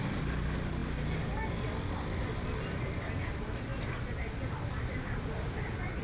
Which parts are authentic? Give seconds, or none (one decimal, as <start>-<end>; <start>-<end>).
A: 0.0-6.0